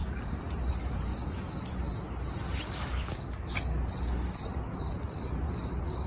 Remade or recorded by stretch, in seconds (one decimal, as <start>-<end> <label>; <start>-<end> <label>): 0.0-1.1 remade; 1.1-4.8 recorded; 4.8-6.1 remade